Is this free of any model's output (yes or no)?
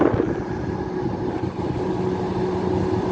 yes